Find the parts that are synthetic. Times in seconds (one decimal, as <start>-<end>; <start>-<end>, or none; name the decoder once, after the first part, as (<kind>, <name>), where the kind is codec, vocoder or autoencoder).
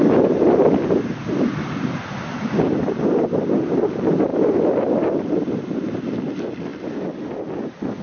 none